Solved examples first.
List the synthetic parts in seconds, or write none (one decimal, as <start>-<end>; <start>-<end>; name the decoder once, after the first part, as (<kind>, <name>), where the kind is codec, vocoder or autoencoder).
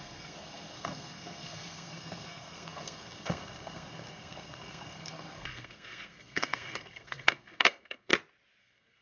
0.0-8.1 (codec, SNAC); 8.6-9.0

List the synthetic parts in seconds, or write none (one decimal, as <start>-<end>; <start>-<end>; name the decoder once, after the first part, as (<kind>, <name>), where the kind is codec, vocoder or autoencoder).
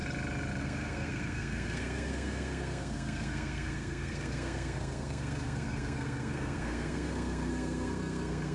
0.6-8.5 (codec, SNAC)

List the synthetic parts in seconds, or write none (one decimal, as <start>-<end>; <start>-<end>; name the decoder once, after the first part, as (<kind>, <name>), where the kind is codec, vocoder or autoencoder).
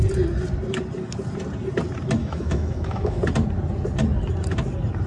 2.2-3.2 (autoencoder, DAC-VAE)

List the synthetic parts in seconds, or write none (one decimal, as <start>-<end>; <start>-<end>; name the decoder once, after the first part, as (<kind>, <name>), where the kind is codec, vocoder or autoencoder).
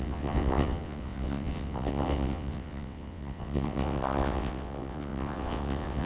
0.0-6.1 (vocoder, WaveNeXt)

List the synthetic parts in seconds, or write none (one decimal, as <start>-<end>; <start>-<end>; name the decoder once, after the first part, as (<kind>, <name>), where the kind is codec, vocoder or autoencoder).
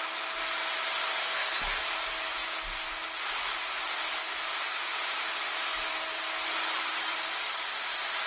1.2-1.8 (codec, SNAC)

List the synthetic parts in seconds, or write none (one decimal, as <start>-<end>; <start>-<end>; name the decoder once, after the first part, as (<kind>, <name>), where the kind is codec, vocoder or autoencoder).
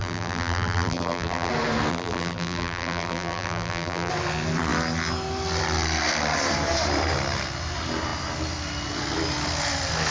0.0-1.5 (vocoder, BigVGAN v2); 1.9-4.1